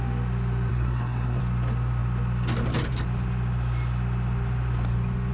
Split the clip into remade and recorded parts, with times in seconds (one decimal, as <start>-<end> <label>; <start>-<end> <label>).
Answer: 0.0-0.7 recorded; 0.7-1.4 remade; 1.4-5.3 recorded